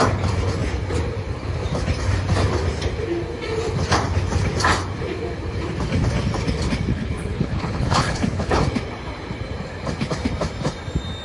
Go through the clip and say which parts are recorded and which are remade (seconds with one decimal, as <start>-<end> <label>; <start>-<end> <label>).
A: 0.0-6.9 recorded; 6.9-8.6 remade; 8.6-11.2 recorded

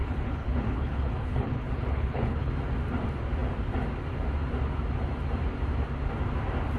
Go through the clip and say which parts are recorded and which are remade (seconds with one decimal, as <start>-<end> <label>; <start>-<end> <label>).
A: 0.0-2.5 remade; 2.5-6.8 recorded

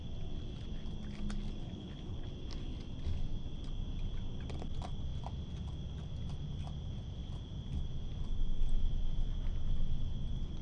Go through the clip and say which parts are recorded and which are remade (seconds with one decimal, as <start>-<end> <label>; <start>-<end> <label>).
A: 0.0-1.6 recorded; 1.6-2.3 remade; 2.3-10.6 recorded

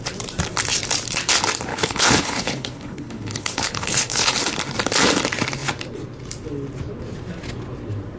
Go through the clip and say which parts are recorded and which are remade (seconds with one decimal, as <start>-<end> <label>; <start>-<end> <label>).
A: 0.0-1.7 recorded; 1.7-4.3 remade; 4.3-8.2 recorded

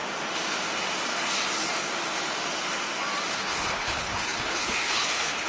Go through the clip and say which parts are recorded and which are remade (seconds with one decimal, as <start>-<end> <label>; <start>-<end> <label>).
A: 0.0-3.3 recorded; 3.3-5.5 remade

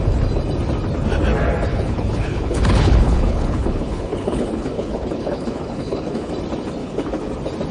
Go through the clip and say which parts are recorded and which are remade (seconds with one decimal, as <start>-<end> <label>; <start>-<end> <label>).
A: 0.0-1.7 recorded; 1.7-6.3 remade; 6.3-6.8 recorded; 6.8-7.3 remade; 7.3-7.7 recorded